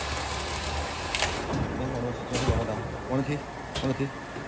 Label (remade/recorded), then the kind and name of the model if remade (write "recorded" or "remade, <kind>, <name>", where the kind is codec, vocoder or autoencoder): recorded